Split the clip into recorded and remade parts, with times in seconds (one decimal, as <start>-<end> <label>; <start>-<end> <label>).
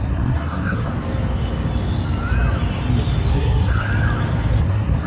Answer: 0.0-0.9 remade; 0.9-3.3 recorded; 3.3-3.9 remade; 3.9-4.6 recorded; 4.6-5.1 remade